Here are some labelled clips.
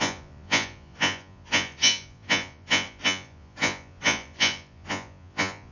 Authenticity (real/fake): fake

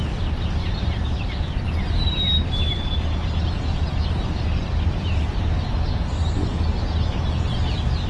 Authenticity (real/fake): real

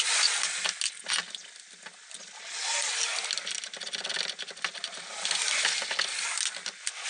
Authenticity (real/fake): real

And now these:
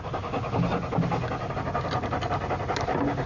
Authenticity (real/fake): real